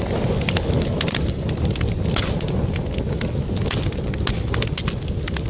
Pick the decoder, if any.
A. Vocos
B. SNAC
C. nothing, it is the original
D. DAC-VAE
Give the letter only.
C